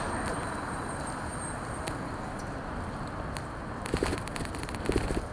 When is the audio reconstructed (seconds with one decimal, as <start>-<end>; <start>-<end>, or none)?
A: 1.3-3.6; 4.1-4.7